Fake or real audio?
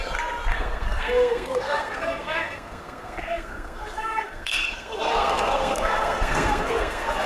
fake